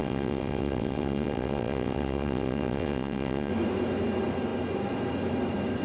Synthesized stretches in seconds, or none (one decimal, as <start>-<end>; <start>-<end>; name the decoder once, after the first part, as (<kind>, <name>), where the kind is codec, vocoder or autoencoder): 0.0-3.5 (vocoder, WaveNeXt)